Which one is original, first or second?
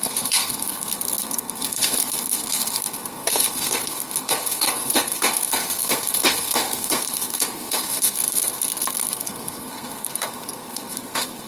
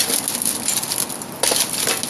second